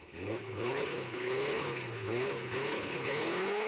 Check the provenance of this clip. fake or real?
fake